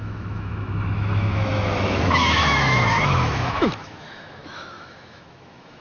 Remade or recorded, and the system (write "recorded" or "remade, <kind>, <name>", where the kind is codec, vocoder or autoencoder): remade, autoencoder, DAC-VAE